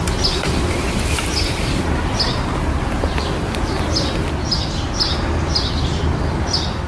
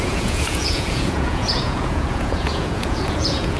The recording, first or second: first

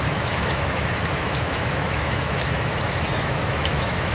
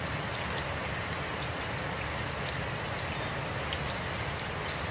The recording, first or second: second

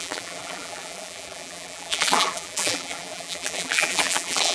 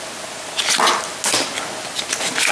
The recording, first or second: second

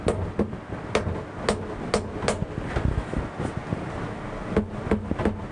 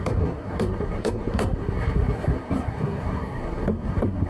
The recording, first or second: first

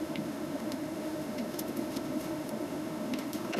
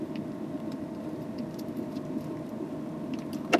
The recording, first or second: second